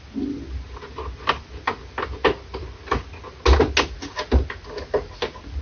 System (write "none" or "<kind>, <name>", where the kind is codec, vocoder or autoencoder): none